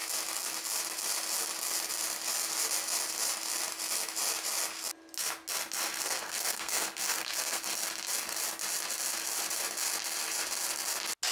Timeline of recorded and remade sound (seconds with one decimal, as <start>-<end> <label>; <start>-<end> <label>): 0.0-6.0 recorded; 6.0-7.6 remade; 7.6-11.3 recorded